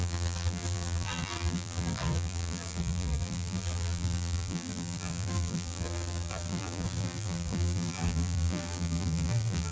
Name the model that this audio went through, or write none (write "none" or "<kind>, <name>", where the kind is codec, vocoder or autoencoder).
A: vocoder, BigVGAN v2